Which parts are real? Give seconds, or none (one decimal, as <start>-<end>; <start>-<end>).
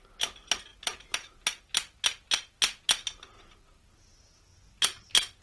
0.0-5.4